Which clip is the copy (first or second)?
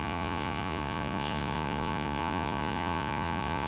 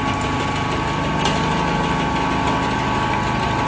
first